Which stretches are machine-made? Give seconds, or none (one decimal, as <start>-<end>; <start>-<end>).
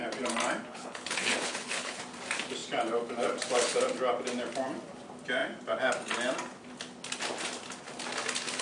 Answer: 0.7-2.0